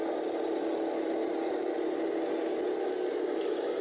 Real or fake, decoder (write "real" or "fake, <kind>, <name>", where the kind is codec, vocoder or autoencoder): real